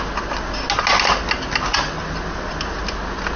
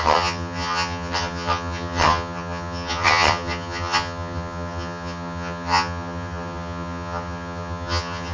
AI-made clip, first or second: second